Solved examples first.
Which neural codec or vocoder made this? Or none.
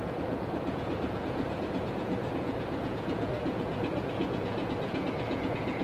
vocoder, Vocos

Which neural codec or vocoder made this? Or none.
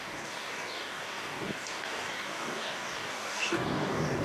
codec, DAC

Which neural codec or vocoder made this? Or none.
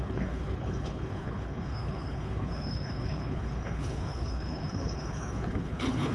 codec, HILCodec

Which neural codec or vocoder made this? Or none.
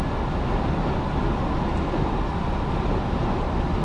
none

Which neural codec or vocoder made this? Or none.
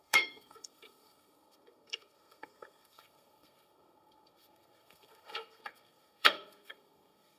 codec, SNAC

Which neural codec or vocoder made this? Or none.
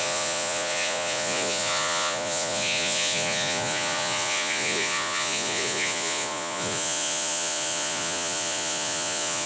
vocoder, Vocos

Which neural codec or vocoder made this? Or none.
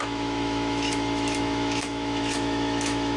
autoencoder, DAC-VAE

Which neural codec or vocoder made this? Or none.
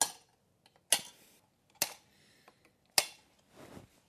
none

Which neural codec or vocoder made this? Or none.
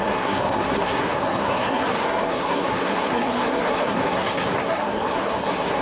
codec, SNAC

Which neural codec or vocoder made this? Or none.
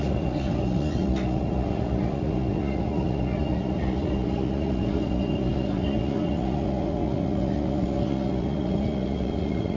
vocoder, Vocos